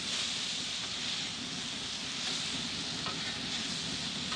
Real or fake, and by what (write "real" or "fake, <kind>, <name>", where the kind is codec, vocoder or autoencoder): real